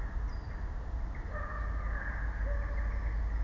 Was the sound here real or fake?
real